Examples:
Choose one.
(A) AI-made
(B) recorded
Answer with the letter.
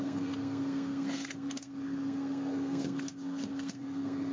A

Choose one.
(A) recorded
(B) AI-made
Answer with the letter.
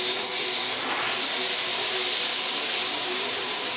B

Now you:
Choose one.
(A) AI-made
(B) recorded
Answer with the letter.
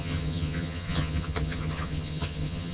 A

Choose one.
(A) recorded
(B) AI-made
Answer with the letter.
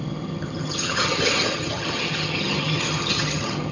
B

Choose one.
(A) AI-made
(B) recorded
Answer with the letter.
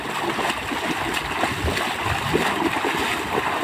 B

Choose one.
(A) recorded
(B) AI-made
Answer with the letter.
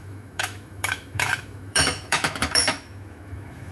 B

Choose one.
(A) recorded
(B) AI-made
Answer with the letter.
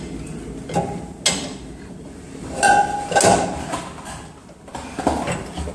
A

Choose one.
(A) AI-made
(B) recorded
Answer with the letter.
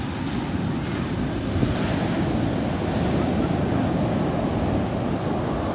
B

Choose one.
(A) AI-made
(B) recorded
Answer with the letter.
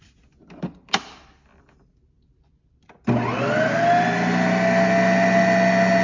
B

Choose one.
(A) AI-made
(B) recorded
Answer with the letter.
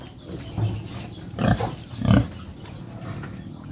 B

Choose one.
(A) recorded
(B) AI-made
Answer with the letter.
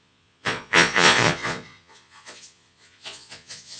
B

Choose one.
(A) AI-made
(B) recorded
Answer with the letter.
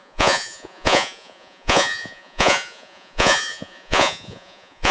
A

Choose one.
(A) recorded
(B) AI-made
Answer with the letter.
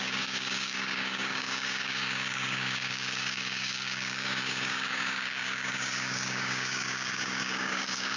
B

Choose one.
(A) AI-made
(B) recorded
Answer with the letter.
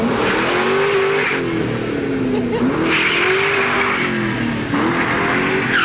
B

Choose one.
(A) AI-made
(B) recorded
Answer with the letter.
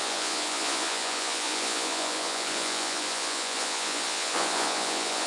A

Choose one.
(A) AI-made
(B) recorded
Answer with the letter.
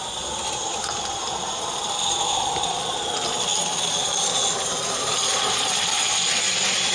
B